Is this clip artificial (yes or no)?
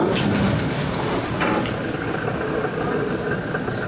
no